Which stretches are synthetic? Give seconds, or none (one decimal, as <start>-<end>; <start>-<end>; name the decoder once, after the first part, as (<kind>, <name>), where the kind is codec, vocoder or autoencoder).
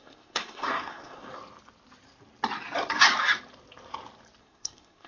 0.0-1.3 (codec, SNAC); 4.4-5.1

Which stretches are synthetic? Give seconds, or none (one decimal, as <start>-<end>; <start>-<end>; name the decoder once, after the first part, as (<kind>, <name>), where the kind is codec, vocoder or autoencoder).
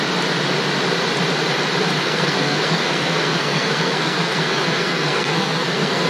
2.0-6.1 (codec, SNAC)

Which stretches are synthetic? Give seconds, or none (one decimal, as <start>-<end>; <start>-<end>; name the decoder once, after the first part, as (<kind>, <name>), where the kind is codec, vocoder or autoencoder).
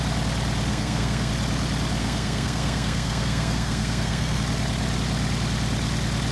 0.7-1.3 (codec, SNAC); 2.0-4.4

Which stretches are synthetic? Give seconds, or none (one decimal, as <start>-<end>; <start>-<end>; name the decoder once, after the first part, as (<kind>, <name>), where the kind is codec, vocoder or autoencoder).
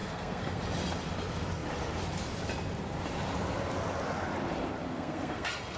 0.0-0.6 (codec, SNAC); 4.9-5.8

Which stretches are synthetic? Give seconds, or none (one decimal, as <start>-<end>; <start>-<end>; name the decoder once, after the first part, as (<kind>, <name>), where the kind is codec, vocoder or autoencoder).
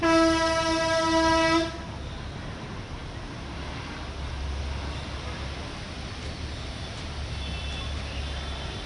none